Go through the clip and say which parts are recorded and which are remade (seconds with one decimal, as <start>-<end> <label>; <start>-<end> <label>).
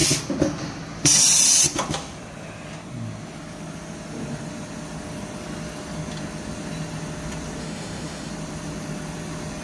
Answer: 0.0-7.6 recorded; 7.6-8.3 remade; 8.3-9.6 recorded